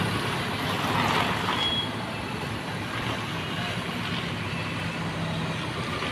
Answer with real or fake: real